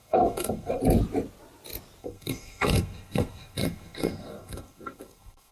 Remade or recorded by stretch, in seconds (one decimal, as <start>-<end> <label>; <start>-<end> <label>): 0.0-0.8 remade; 0.8-2.0 recorded; 2.0-5.5 remade

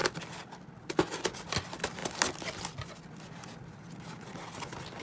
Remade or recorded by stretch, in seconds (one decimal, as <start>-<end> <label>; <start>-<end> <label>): 0.0-5.0 recorded